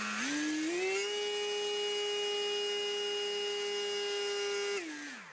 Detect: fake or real real